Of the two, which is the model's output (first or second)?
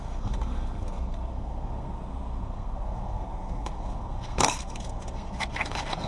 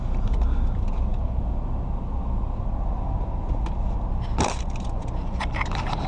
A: first